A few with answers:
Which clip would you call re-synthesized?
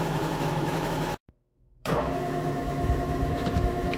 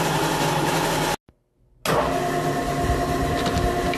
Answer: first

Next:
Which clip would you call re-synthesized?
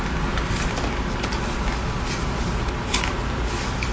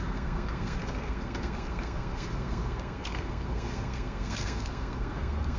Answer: second